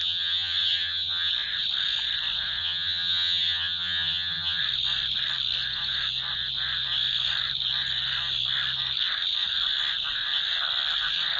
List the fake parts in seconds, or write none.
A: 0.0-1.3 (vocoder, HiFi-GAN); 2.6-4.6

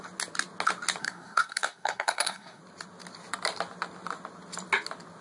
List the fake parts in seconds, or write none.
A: 1.0-2.6 (codec, SNAC)

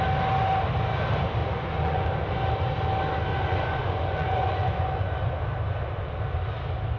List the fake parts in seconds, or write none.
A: 1.4-2.1 (vocoder, Vocos); 3.3-5.4

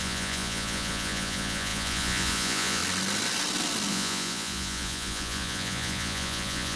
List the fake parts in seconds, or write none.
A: 0.0-2.8 (vocoder, Vocos); 3.9-6.8

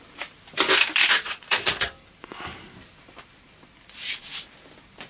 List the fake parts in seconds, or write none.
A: 1.0-1.9 (vocoder, Vocos)

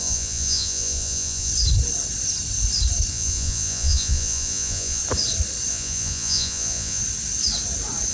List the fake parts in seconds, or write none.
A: 0.0-1.5 (vocoder, Vocos); 3.1-5.0; 5.7-7.0

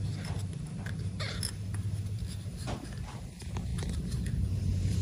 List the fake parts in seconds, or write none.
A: 0.4-1.3 (vocoder, BigVGAN v2); 3.7-5.0

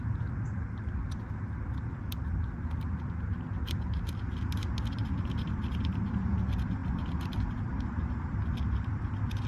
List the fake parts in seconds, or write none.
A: none